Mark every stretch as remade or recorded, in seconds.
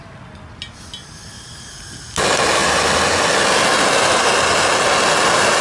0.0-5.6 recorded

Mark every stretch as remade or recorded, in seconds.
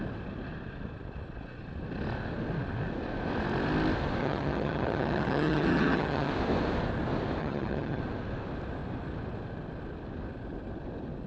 0.0-4.2 recorded; 4.2-6.3 remade; 6.3-7.4 recorded; 7.4-8.0 remade; 8.0-11.3 recorded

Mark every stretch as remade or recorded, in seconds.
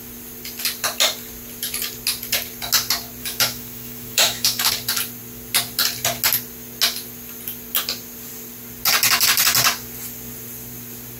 0.0-3.2 recorded; 3.2-4.7 remade; 4.7-11.2 recorded